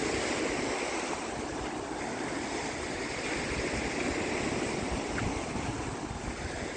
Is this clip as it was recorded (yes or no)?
yes